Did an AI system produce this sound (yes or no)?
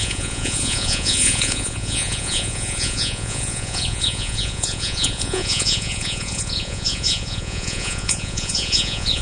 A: yes